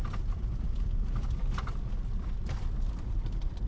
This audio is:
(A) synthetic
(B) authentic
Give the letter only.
B